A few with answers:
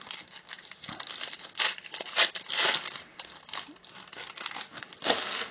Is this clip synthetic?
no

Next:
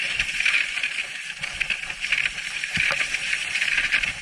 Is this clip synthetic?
no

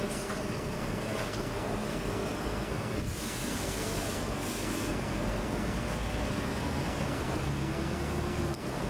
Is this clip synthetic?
yes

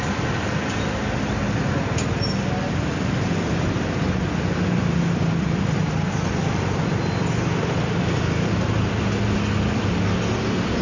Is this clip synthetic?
no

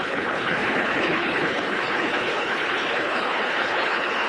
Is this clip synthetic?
yes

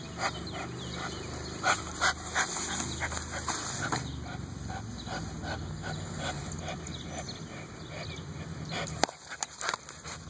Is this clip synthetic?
no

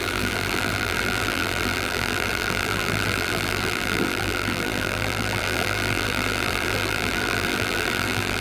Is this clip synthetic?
yes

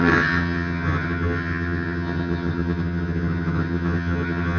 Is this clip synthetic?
yes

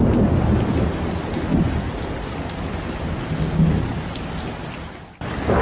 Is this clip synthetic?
no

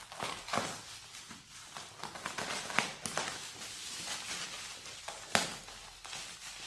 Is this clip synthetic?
no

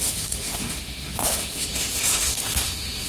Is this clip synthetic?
yes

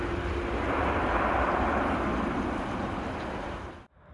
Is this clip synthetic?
no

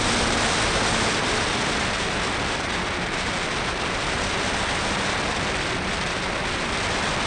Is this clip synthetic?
no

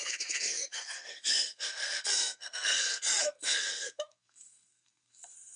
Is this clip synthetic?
yes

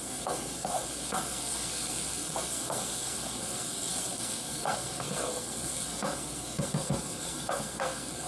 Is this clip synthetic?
yes